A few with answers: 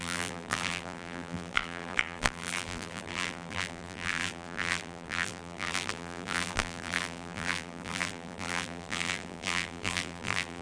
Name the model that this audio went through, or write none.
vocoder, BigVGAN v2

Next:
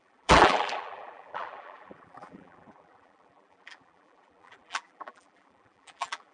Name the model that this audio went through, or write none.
vocoder, BigVGAN v2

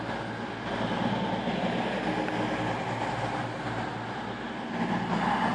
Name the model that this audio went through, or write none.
none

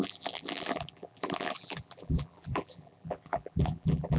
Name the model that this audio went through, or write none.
vocoder, BigVGAN v2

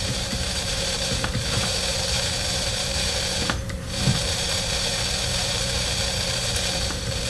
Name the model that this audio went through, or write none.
vocoder, BigVGAN v2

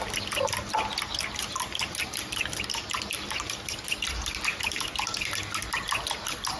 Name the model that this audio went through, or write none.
none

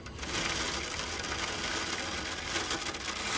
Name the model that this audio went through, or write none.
none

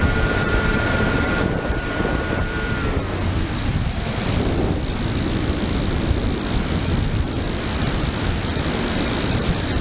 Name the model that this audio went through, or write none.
vocoder, BigVGAN v2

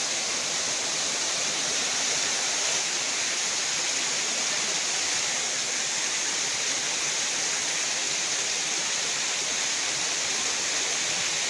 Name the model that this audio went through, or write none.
none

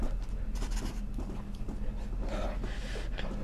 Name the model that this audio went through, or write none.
none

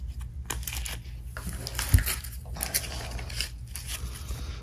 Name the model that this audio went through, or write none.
none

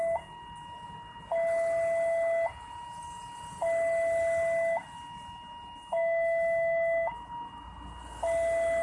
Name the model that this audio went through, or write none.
none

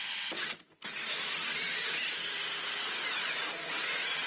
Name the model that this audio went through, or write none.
none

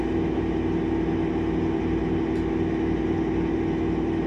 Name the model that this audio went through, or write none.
none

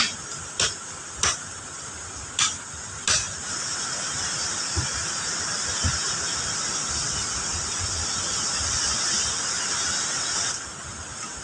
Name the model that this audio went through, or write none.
none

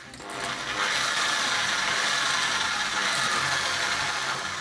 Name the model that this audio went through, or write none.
none